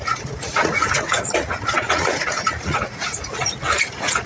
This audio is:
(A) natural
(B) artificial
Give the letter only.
B